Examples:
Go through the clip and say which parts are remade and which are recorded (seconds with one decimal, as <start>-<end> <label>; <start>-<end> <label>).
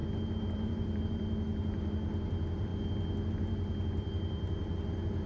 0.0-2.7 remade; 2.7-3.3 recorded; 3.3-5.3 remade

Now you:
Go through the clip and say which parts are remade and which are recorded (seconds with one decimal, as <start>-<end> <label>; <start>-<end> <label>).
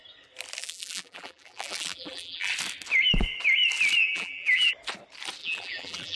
0.0-0.6 recorded; 0.6-2.5 remade; 2.5-4.0 recorded; 4.0-4.7 remade; 4.7-5.4 recorded; 5.4-6.2 remade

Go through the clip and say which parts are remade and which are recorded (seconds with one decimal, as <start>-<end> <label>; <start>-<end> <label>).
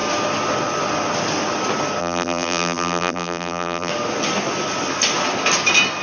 0.0-2.0 recorded; 2.0-3.9 remade; 3.9-6.0 recorded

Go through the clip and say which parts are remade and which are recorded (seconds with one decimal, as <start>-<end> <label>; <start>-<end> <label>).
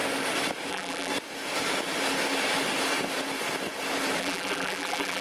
0.0-0.7 recorded; 0.7-1.1 remade; 1.1-4.2 recorded; 4.2-5.2 remade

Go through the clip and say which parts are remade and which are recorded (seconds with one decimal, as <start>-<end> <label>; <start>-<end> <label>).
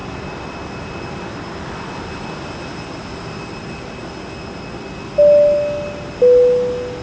0.0-7.0 recorded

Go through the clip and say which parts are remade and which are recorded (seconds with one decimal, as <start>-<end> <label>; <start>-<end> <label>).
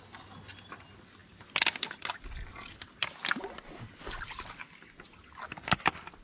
0.0-6.2 recorded